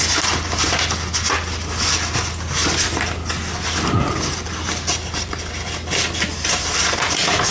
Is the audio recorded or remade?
recorded